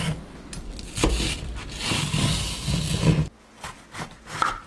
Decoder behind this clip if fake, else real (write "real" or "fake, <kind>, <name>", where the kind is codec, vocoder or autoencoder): real